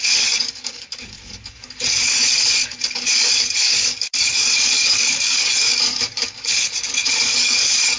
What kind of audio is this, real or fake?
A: fake